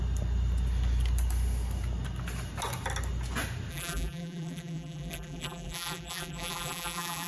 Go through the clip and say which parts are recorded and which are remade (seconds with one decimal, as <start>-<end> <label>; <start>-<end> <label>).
0.0-3.7 recorded; 3.7-7.3 remade